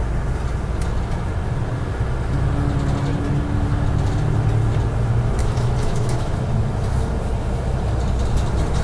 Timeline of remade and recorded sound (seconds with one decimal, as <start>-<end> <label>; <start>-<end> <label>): 0.0-5.4 recorded; 5.4-6.4 remade; 6.4-8.8 recorded